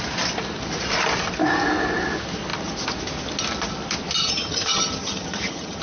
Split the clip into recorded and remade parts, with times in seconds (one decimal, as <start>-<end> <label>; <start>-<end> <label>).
0.0-4.2 recorded; 4.2-5.8 remade